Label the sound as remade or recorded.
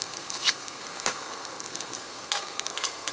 remade